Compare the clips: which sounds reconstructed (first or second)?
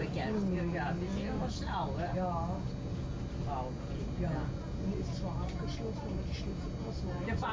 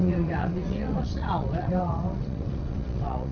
second